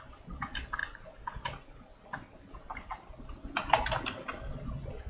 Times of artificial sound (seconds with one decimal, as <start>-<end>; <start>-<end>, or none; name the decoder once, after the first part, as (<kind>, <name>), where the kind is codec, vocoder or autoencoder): none